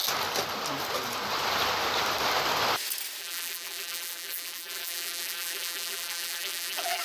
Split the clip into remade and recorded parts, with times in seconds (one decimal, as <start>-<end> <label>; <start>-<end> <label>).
0.0-3.2 recorded; 3.2-7.0 remade